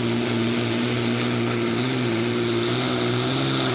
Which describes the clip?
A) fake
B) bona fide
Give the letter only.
B